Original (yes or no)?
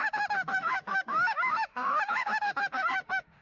no